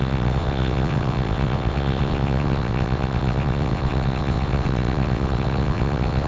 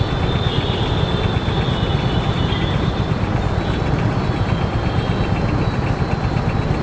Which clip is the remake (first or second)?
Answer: first